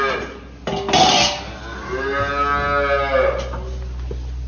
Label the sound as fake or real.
real